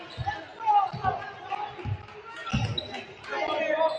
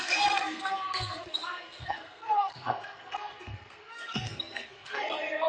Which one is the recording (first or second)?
first